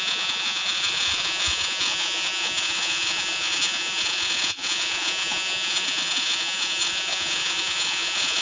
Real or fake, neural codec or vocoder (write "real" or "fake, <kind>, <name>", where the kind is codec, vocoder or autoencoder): fake, vocoder, Vocos